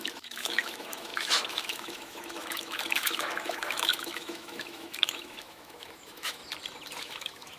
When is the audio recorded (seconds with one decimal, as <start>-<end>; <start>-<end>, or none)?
6.4-7.0